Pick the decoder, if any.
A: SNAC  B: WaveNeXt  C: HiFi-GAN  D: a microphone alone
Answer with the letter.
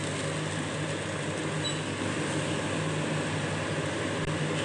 D